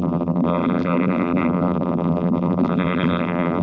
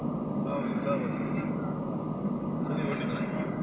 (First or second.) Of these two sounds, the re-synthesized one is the first